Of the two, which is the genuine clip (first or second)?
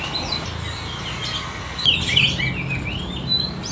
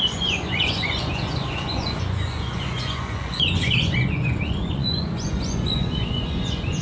first